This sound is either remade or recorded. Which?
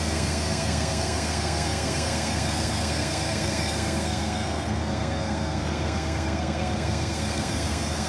remade